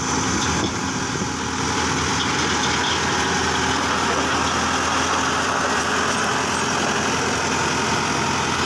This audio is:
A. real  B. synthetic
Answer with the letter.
A